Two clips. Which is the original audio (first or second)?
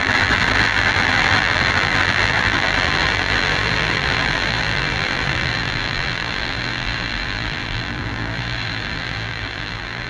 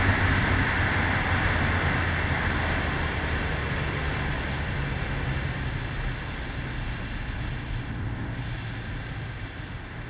second